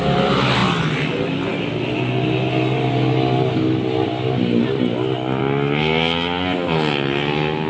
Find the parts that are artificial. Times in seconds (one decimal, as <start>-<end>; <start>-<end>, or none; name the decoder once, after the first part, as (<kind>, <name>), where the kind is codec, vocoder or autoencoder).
none